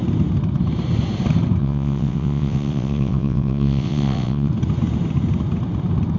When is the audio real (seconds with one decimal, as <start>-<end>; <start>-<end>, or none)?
0.0-1.6; 4.5-6.2